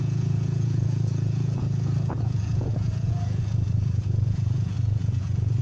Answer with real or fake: fake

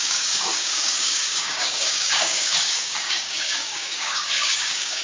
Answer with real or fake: fake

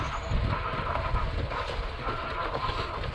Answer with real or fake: real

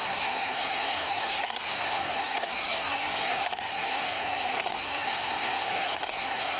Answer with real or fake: fake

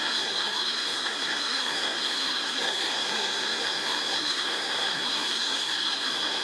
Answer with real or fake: fake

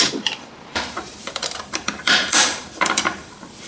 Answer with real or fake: fake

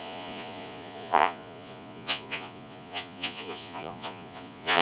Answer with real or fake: fake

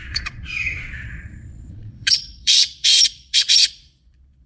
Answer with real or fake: fake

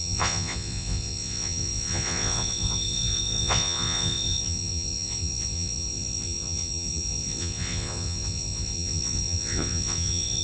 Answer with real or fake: fake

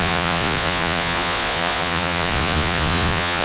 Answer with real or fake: fake